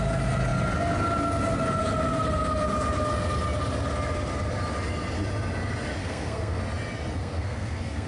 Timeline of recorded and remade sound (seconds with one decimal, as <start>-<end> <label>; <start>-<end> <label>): 0.0-6.0 recorded; 6.0-6.6 remade; 6.6-7.2 recorded; 7.2-8.1 remade